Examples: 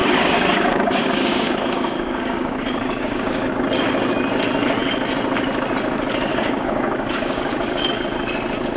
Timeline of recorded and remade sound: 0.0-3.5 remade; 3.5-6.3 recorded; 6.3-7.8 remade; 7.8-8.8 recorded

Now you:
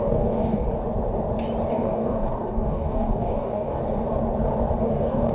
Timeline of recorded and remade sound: 0.0-0.6 remade; 0.6-1.7 recorded; 1.7-3.8 remade; 3.8-4.8 recorded; 4.8-5.3 remade

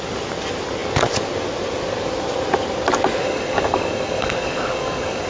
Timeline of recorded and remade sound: 0.0-3.2 recorded; 3.2-5.3 remade

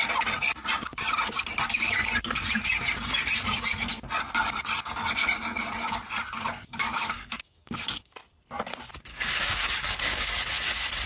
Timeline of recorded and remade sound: 0.0-6.5 recorded; 6.5-8.1 remade; 8.1-9.1 recorded; 9.1-10.3 remade; 10.3-11.1 recorded

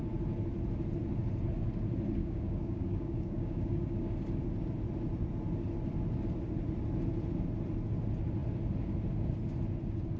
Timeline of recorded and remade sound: 0.0-2.2 recorded; 2.2-4.1 remade; 4.1-10.2 recorded

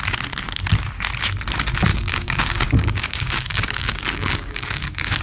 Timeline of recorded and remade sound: 0.0-1.9 recorded; 1.9-5.2 remade

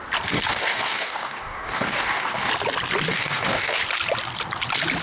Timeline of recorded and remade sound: 0.0-0.5 recorded; 0.5-2.5 remade; 2.5-3.1 recorded; 3.1-3.8 remade; 3.8-5.0 recorded